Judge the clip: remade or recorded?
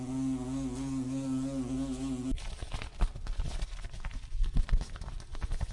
recorded